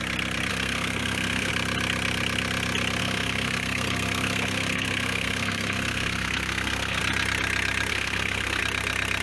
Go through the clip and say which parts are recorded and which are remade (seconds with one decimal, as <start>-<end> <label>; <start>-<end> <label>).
0.0-0.5 recorded; 0.5-1.5 remade; 1.5-3.0 recorded; 3.0-7.0 remade; 7.0-7.9 recorded; 7.9-8.6 remade; 8.6-9.2 recorded